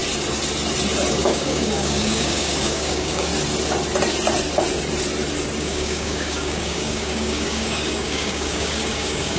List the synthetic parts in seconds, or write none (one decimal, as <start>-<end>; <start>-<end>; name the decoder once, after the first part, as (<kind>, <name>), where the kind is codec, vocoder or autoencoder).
1.1-3.3 (codec, DAC); 5.6-9.4